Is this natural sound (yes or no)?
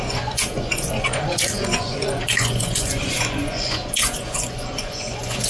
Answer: no